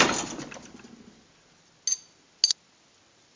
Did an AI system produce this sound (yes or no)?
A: no